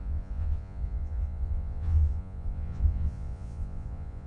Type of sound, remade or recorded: remade